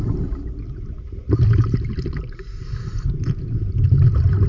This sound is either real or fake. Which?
real